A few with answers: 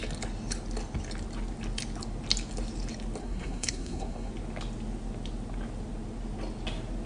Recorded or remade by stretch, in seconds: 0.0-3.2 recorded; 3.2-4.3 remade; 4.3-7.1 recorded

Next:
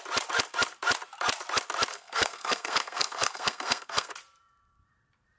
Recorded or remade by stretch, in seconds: 0.0-1.9 recorded; 1.9-4.1 remade; 4.1-5.4 recorded

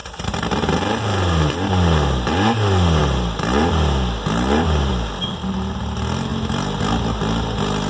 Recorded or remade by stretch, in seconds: 0.0-7.9 recorded

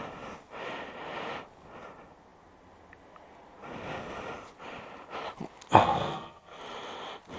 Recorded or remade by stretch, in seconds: 0.0-5.8 recorded; 5.8-6.6 remade; 6.6-7.4 recorded

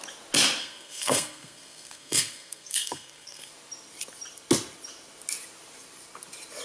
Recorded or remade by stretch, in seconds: 0.0-0.6 recorded; 0.6-3.5 remade; 3.5-6.6 recorded

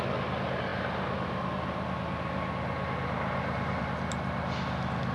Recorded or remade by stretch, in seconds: 0.0-5.1 recorded

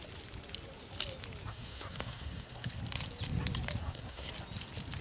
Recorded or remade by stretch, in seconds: 0.0-1.5 recorded; 1.5-2.7 remade; 2.7-3.8 recorded; 3.8-4.3 remade; 4.3-5.0 recorded